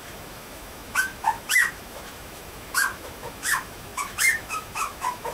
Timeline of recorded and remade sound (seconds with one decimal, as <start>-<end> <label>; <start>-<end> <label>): 0.0-5.3 remade

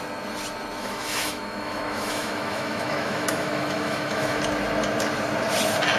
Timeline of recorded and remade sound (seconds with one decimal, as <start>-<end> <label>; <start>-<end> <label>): 0.0-0.8 recorded; 0.8-4.4 remade; 4.4-6.0 recorded

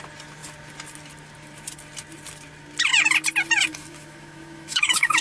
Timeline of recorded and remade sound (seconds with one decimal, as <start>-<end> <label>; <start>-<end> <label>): 0.0-3.7 recorded; 3.7-5.2 remade

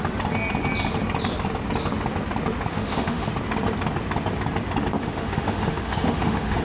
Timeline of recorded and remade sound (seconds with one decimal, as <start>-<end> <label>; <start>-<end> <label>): 0.0-2.7 recorded; 2.7-3.3 remade; 3.3-5.0 recorded; 5.0-6.6 remade

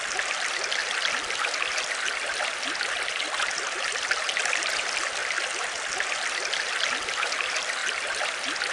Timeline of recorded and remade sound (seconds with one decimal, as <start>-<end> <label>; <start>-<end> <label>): 0.0-8.7 recorded